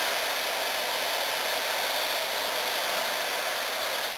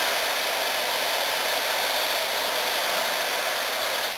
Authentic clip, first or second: first